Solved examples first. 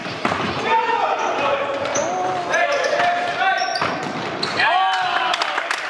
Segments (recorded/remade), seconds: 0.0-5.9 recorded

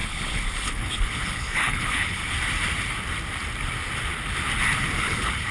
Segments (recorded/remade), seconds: 0.0-2.2 remade; 2.2-5.0 recorded; 5.0-5.5 remade

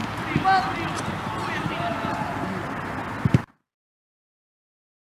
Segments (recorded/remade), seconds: 0.0-5.1 recorded

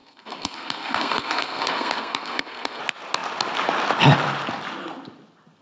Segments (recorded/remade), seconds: 0.0-2.8 remade; 2.8-5.6 recorded

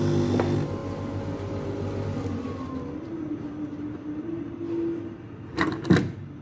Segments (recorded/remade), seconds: 0.0-6.4 recorded

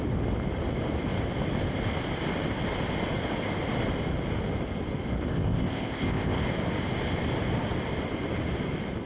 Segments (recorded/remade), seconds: 0.0-5.3 recorded; 5.3-6.4 remade; 6.4-9.1 recorded